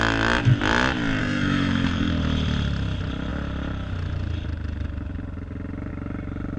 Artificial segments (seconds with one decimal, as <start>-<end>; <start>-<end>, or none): 1.2-2.1